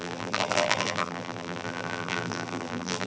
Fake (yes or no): yes